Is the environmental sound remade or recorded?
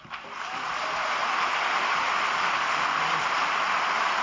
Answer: recorded